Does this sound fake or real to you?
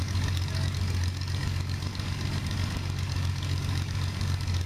fake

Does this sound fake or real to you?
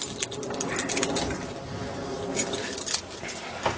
real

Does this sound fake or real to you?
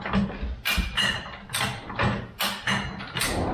real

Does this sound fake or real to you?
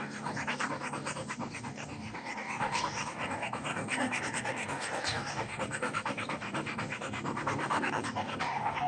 fake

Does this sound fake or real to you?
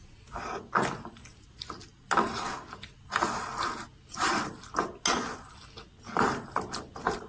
real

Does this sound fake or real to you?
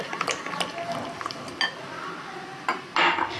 real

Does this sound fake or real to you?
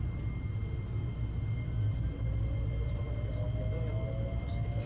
real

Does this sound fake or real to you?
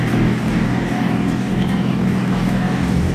fake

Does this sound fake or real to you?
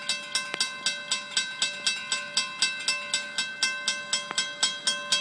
real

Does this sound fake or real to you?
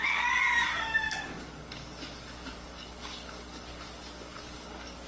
fake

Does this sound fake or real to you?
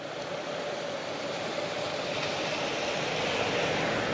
real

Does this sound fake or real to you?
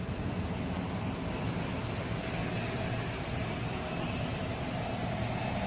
real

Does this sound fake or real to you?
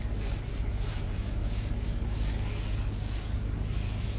fake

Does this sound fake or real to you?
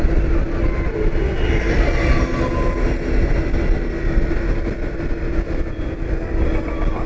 real